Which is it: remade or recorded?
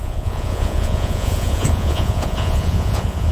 remade